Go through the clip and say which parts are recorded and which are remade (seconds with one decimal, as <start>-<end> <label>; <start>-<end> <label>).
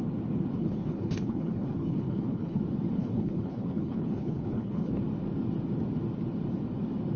0.0-0.6 recorded; 0.6-2.6 remade; 2.6-3.0 recorded; 3.0-5.0 remade; 5.0-7.2 recorded